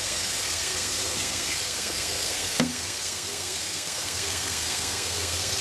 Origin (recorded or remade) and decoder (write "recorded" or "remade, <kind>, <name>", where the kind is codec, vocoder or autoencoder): remade, codec, SNAC